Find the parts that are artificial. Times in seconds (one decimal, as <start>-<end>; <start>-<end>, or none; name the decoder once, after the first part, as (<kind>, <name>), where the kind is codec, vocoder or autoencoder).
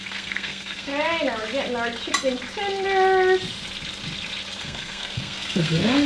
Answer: 0.0-0.9 (codec, SNAC); 4.6-6.1